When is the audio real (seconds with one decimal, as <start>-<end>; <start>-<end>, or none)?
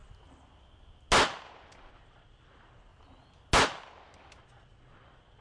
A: 0.0-1.9; 2.9-4.4